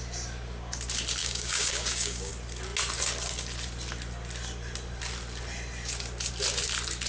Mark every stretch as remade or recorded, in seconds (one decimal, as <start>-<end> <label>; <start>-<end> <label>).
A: 0.0-1.2 recorded; 1.2-2.3 remade; 2.3-7.1 recorded